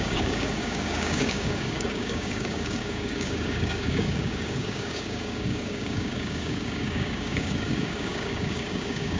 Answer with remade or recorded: remade